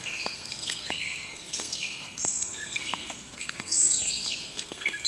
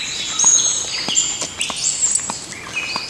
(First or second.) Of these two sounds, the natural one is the second